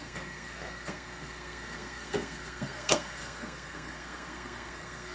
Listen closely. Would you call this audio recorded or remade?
remade